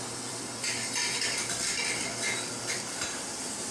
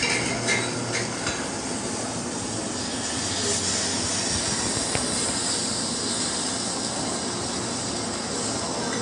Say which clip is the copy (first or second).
first